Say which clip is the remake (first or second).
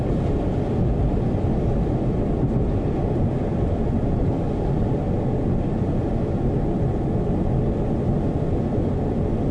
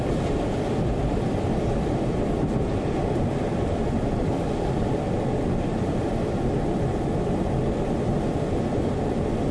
second